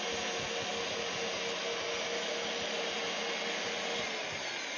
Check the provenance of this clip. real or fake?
real